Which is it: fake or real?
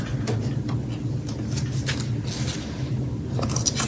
real